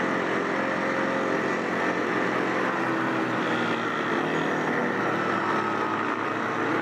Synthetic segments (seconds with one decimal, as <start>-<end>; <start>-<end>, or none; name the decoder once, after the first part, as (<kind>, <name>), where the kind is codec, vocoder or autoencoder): none